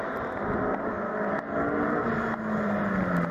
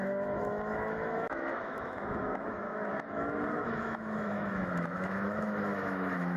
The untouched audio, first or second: first